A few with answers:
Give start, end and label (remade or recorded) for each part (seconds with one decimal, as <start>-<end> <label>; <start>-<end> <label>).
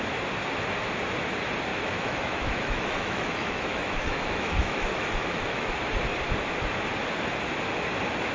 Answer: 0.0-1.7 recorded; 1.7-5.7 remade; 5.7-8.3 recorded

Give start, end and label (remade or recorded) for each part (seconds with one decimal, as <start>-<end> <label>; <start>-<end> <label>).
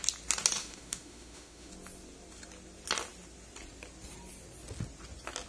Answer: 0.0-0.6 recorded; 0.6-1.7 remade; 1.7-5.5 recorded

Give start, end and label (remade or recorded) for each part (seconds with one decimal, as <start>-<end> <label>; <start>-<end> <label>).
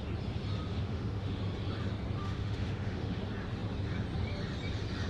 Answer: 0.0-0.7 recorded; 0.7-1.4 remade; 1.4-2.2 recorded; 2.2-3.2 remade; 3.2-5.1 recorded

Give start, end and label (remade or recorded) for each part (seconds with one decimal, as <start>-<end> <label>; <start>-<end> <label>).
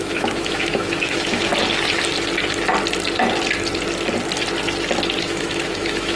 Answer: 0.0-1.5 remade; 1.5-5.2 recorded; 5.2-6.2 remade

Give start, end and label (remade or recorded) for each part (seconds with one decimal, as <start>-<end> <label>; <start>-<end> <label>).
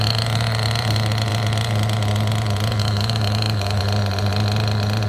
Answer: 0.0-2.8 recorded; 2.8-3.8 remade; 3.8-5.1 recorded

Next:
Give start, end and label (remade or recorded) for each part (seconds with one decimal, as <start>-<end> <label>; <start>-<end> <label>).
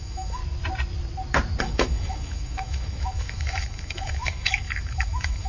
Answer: 0.0-0.4 remade; 0.4-1.6 recorded; 1.6-5.5 remade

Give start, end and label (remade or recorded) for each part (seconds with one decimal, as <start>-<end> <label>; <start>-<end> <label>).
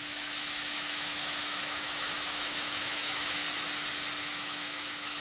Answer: 0.0-3.4 remade; 3.4-4.2 recorded; 4.2-5.2 remade